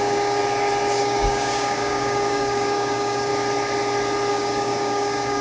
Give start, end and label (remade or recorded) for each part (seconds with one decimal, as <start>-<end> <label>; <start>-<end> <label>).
0.0-0.4 remade; 0.4-1.0 recorded; 1.0-3.3 remade; 3.3-4.3 recorded; 4.3-5.4 remade